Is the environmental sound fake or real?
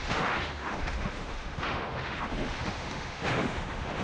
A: fake